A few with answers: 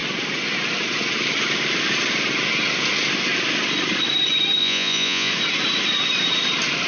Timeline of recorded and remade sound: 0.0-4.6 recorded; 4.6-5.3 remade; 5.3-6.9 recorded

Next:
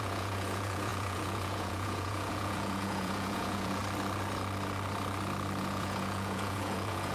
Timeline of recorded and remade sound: 0.0-3.8 remade; 3.8-5.6 recorded; 5.6-7.1 remade

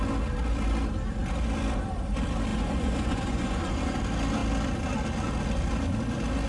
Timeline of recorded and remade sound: 0.0-2.5 recorded; 2.5-4.0 remade; 4.0-6.5 recorded

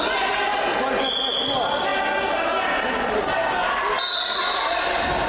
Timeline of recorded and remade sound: 0.0-5.3 recorded

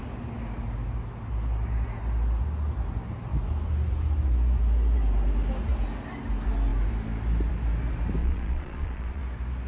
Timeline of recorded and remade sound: 0.0-8.2 recorded; 8.2-9.2 remade; 9.2-9.7 recorded